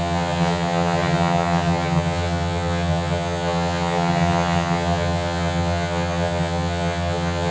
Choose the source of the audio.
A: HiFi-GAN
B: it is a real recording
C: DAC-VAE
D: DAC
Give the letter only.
A